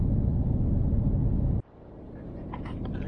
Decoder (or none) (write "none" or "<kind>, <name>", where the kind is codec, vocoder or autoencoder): vocoder, BigVGAN v2